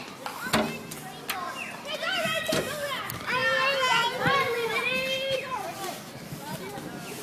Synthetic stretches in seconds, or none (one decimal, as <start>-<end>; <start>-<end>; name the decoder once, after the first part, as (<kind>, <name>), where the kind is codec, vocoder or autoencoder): none